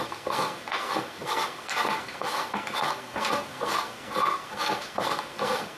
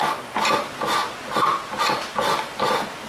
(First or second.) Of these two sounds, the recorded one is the second